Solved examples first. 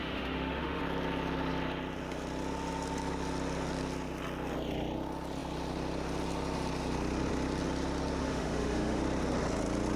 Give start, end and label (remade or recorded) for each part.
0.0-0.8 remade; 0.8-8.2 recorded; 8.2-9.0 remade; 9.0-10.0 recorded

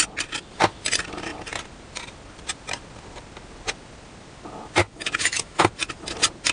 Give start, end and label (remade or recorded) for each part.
0.0-4.8 recorded; 4.8-5.6 remade; 5.6-6.5 recorded

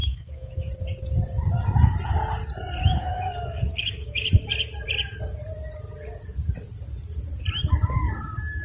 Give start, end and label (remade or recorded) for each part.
0.0-0.7 remade; 0.7-2.8 recorded; 2.8-4.3 remade; 4.3-8.6 recorded

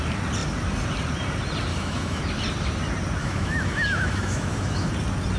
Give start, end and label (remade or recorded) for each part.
0.0-1.7 recorded; 1.7-2.2 remade; 2.2-3.2 recorded; 3.2-4.9 remade; 4.9-5.4 recorded

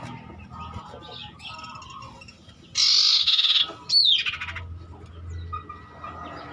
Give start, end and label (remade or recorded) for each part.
0.0-3.1 recorded; 3.1-3.6 remade; 3.6-6.5 recorded